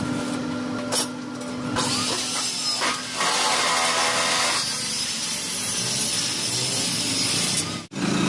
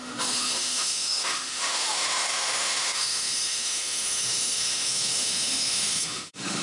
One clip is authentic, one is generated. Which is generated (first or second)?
second